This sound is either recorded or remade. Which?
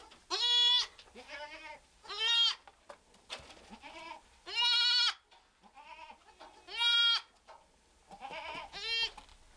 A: recorded